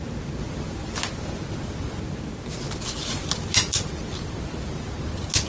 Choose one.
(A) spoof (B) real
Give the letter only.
B